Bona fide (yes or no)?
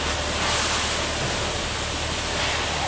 yes